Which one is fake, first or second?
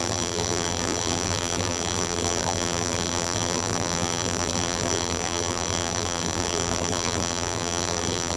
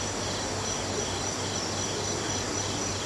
first